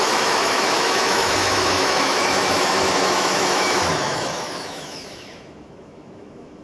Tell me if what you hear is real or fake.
fake